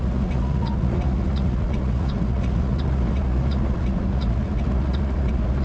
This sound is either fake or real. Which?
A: fake